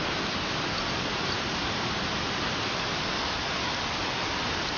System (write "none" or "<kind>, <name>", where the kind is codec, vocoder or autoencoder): none